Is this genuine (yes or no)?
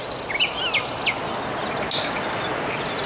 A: yes